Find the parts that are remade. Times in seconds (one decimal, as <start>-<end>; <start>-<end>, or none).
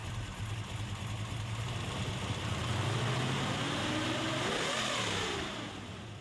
none